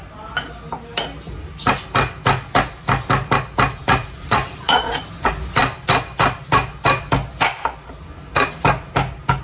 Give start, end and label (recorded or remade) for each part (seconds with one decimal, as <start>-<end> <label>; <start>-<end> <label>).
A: 0.0-3.8 recorded; 3.8-5.0 remade; 5.0-9.4 recorded